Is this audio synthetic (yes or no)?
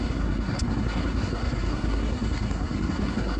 yes